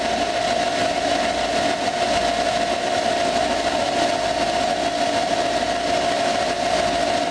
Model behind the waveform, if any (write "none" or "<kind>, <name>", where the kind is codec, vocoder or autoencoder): none